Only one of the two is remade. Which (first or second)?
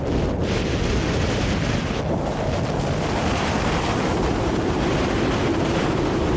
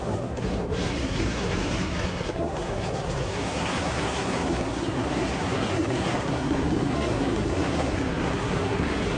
second